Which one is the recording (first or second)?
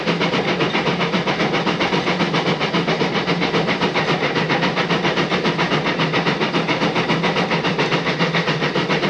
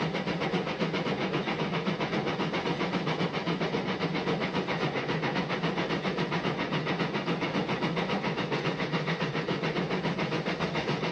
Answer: first